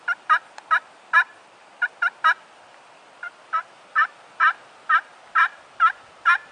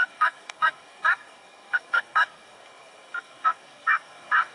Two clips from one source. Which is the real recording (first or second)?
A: first